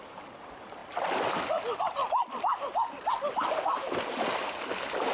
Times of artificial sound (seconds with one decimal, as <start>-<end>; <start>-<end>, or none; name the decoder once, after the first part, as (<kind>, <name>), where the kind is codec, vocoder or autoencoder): none

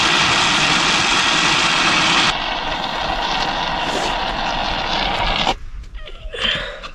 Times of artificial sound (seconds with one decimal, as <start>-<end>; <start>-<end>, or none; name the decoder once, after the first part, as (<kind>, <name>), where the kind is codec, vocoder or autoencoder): none

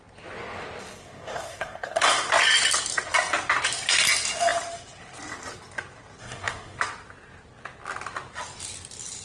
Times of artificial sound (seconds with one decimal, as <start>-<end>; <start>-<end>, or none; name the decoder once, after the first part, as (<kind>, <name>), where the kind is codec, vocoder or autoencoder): 1.0-2.3 (codec, SNAC); 6.2-6.8

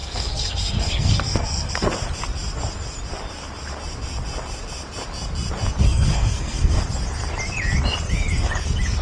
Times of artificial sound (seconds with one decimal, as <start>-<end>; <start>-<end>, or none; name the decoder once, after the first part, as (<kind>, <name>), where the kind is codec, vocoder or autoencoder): 0.0-1.9 (codec, SNAC); 5.8-6.8